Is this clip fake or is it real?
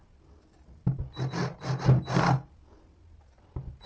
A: real